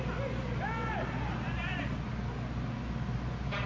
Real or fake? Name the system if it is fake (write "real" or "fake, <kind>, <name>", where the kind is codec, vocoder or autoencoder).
real